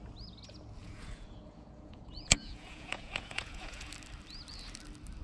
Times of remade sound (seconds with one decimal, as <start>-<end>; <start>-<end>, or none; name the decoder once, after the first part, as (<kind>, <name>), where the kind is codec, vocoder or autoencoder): 0.8-3.9 (vocoder, Vocos)